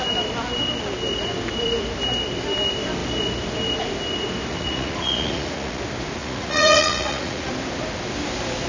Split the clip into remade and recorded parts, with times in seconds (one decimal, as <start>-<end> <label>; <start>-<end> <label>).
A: 0.0-4.5 recorded; 4.5-5.8 remade; 5.8-6.2 recorded; 6.2-7.5 remade; 7.5-8.7 recorded